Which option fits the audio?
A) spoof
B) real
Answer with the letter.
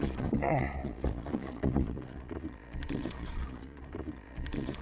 A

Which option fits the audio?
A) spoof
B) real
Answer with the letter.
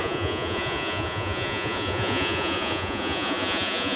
A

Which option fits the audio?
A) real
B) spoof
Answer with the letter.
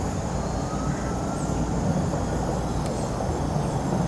A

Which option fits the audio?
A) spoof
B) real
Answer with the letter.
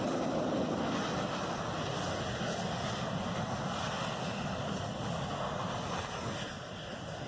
B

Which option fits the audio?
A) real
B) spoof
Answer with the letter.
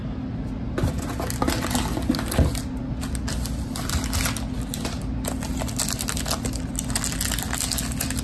A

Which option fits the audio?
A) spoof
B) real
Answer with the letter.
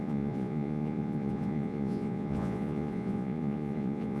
A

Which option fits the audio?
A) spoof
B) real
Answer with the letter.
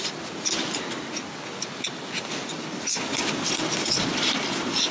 B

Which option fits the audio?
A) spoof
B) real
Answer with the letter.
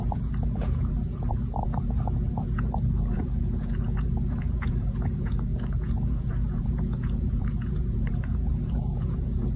A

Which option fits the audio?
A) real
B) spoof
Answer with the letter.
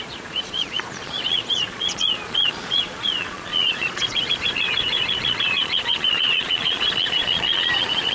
B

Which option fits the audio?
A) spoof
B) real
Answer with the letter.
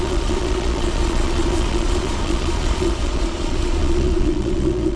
A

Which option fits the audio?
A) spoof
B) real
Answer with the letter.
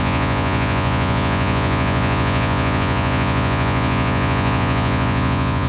A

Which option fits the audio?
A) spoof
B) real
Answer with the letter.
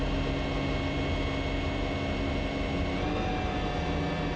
B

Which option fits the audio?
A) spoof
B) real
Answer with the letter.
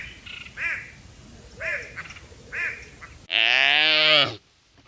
B